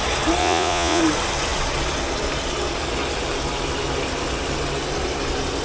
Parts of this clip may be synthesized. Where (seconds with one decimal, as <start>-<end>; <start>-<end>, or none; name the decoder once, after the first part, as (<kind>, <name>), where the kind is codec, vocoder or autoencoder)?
0.4-1.0 (vocoder, Vocos)